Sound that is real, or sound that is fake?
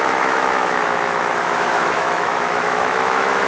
fake